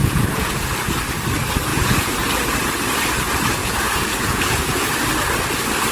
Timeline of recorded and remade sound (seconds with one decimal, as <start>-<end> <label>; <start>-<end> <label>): 0.0-0.6 remade; 0.6-1.7 recorded; 1.7-2.3 remade; 2.3-3.6 recorded; 3.6-4.9 remade; 4.9-5.9 recorded